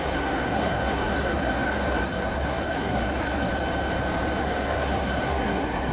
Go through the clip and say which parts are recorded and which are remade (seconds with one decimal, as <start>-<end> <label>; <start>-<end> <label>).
0.0-3.5 remade; 3.5-4.4 recorded; 4.4-5.9 remade